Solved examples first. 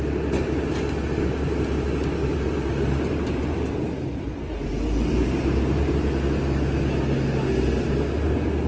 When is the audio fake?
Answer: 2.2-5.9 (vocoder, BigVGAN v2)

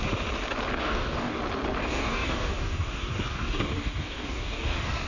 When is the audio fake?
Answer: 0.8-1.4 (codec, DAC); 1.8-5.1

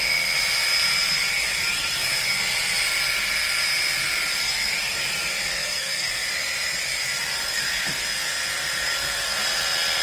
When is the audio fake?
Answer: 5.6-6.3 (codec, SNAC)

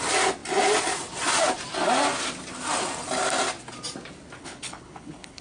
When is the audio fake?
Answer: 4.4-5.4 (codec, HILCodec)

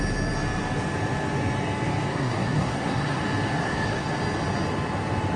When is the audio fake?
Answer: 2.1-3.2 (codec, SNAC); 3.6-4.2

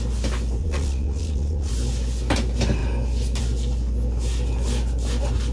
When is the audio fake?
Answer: 0.6-1.7 (vocoder, Vocos)